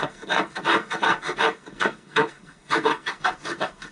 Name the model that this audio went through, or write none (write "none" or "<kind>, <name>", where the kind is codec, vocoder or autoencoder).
codec, SNAC